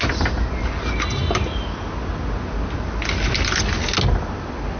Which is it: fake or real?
real